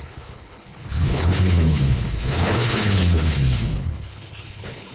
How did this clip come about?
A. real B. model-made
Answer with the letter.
B